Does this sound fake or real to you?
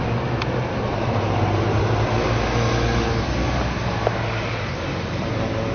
real